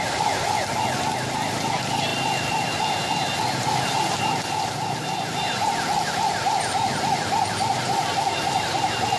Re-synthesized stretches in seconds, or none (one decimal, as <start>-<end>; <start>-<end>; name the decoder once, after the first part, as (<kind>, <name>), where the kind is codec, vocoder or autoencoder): none

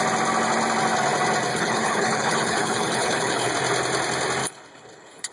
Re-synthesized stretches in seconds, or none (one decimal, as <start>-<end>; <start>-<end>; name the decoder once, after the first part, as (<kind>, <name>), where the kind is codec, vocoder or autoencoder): 1.5-3.5 (codec, HILCodec); 4.4-5.3